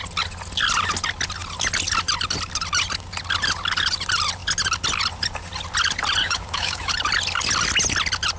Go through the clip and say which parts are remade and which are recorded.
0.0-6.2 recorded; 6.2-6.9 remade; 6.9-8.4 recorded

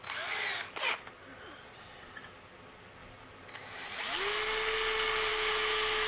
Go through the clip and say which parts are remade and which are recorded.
0.0-5.3 recorded; 5.3-6.1 remade

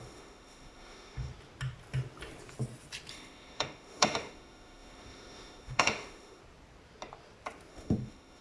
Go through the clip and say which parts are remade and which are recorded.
0.0-1.3 remade; 1.3-3.1 recorded; 3.1-6.4 remade; 6.4-7.7 recorded; 7.7-8.4 remade

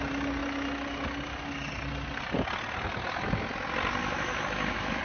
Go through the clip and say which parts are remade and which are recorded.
0.0-4.0 recorded; 4.0-5.0 remade

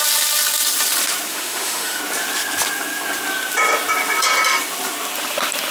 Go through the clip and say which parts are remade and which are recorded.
0.0-1.3 recorded; 1.3-2.0 remade; 2.0-5.7 recorded

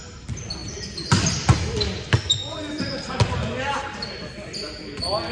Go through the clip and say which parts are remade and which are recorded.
0.0-5.3 recorded

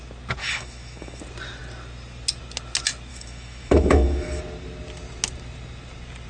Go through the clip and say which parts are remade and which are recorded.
0.0-0.4 recorded; 0.4-1.2 remade; 1.2-3.1 recorded; 3.1-4.4 remade; 4.4-6.3 recorded